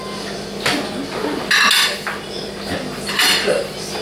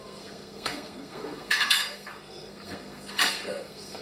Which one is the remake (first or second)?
second